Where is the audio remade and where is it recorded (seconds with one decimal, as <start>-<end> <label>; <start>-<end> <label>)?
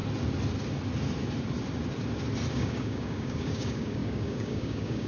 0.0-2.5 recorded; 2.5-5.1 remade